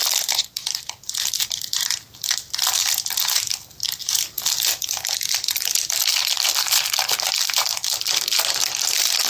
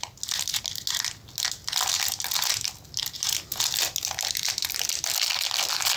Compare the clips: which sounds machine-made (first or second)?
first